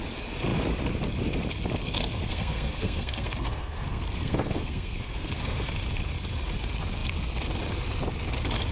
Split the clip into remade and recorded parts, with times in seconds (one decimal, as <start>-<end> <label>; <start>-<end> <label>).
0.0-1.8 recorded; 1.8-5.7 remade; 5.7-8.7 recorded